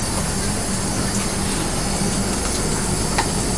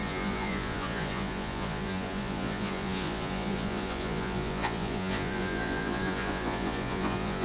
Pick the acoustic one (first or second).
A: first